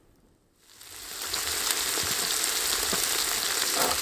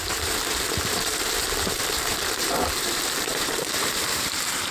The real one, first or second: first